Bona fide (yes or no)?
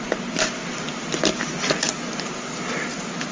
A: yes